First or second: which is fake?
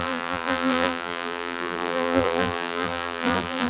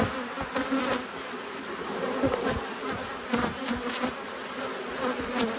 first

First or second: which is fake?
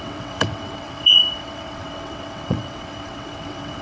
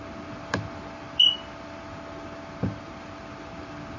first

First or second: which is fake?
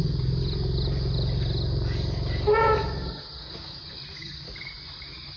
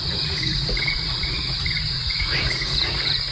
second